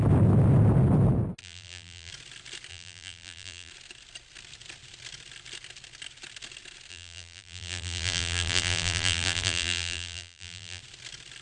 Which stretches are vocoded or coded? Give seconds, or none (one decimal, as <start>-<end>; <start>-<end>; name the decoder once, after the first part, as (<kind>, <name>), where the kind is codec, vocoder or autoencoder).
1.4-2.1 (vocoder, BigVGAN v2); 2.7-3.7; 6.9-10.8